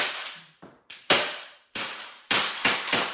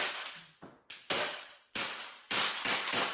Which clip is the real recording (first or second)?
second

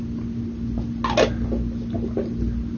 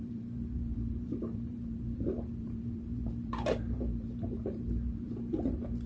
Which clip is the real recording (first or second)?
first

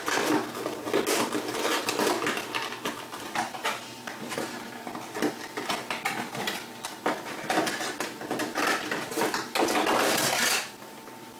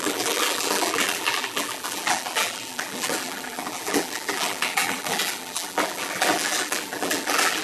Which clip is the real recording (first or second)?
first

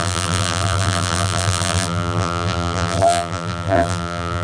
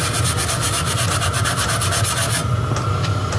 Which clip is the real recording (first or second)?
second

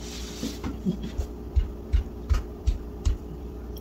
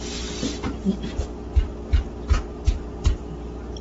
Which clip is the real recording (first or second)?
second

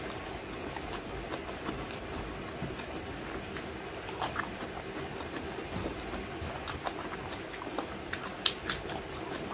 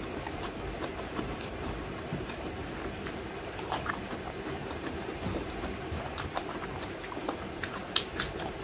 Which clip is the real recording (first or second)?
first